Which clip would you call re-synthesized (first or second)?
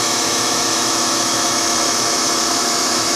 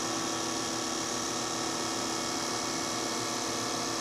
first